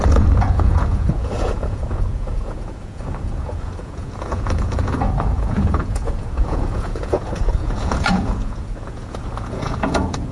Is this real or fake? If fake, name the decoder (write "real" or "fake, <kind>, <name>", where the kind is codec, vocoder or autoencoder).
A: fake, vocoder, Vocos